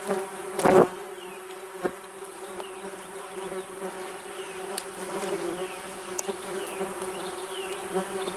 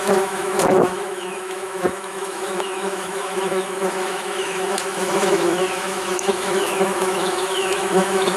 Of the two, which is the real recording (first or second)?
first